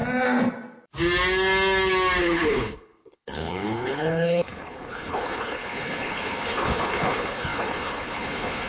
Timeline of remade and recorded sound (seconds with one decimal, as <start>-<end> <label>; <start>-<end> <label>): 0.0-2.2 recorded; 2.2-8.7 remade